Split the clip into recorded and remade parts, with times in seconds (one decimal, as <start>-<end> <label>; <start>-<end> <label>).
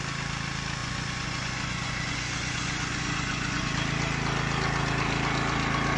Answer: 0.0-0.8 recorded; 0.8-3.7 remade; 3.7-6.0 recorded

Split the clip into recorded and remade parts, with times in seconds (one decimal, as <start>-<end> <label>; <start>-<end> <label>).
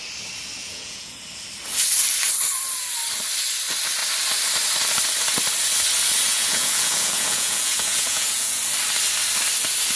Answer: 0.0-0.6 recorded; 0.6-1.2 remade; 1.2-6.3 recorded; 6.3-8.6 remade; 8.6-10.0 recorded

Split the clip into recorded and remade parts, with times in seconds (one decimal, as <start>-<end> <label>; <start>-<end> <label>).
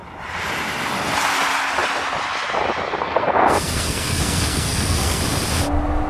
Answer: 0.0-3.0 recorded; 3.0-5.2 remade; 5.2-6.1 recorded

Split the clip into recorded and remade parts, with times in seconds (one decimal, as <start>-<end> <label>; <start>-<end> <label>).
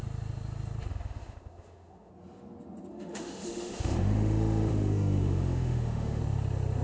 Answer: 0.0-0.9 recorded; 0.9-2.1 remade; 2.1-2.9 recorded; 2.9-6.2 remade; 6.2-6.8 recorded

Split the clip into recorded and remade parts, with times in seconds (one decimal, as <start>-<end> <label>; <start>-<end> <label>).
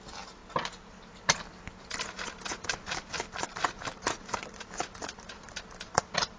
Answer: 0.0-0.4 remade; 0.4-1.8 recorded; 1.8-6.4 remade